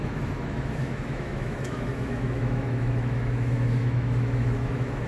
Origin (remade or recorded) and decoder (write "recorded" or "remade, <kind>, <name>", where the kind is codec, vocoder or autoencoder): remade, autoencoder, DAC-VAE